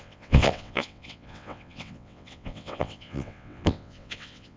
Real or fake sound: fake